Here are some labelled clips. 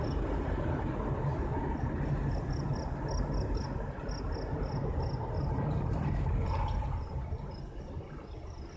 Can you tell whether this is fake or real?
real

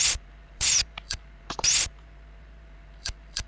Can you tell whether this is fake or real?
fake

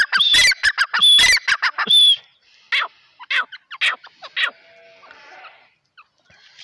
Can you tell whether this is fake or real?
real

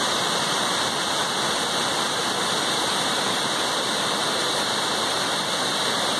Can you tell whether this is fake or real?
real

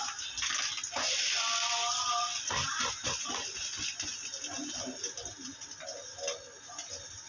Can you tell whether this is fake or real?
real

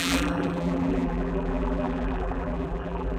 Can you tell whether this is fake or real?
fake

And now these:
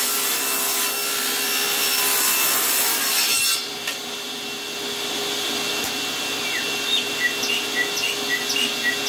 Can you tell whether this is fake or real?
real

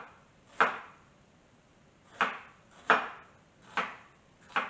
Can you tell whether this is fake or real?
fake